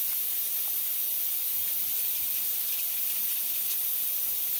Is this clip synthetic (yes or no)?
no